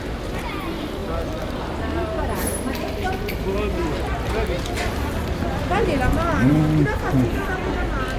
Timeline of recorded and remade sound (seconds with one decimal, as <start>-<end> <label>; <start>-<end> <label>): 0.0-8.2 recorded